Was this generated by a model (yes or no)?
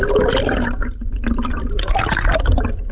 no